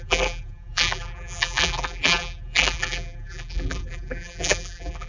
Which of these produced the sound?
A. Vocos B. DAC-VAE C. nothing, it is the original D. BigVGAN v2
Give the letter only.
D